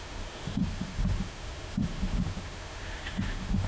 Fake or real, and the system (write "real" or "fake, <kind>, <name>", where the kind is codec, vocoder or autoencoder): fake, autoencoder, DAC-VAE